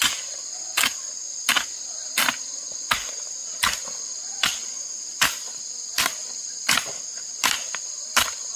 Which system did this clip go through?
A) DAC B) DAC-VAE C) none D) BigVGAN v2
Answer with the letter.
D